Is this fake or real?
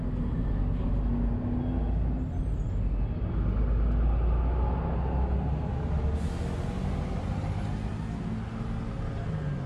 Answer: real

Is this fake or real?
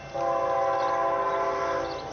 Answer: real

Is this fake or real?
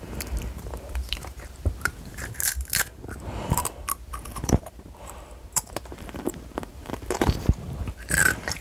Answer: fake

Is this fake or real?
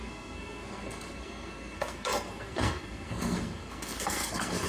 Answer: fake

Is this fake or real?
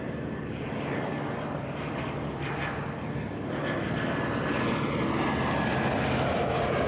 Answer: real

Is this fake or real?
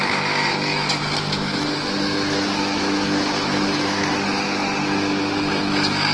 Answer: fake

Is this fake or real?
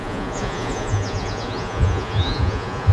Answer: fake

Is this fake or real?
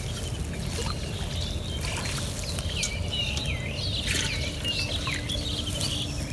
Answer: real